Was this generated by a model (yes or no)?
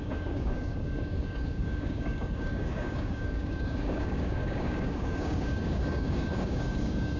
yes